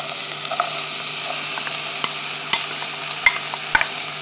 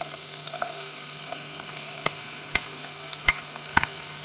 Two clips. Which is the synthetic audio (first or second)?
second